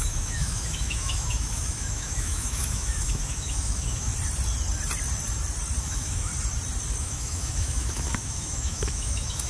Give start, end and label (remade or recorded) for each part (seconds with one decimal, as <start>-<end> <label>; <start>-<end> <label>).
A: 0.0-4.1 remade; 4.1-5.8 recorded; 5.8-6.3 remade; 6.3-7.0 recorded; 7.0-9.5 remade